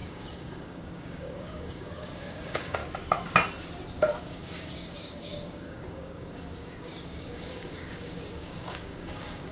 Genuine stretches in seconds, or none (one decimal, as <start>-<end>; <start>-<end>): 2.8-4.2